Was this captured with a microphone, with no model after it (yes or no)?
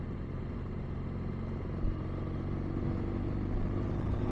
yes